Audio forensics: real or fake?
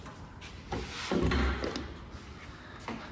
real